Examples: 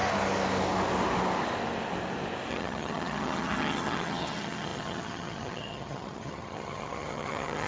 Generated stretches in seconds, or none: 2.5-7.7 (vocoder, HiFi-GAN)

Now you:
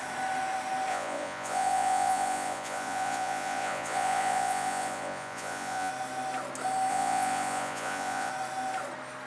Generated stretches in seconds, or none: 0.9-5.9 (vocoder, Vocos); 6.9-8.3

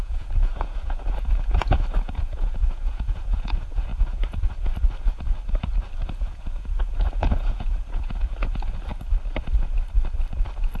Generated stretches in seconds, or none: 0.0-3.9 (vocoder, Vocos); 6.1-8.9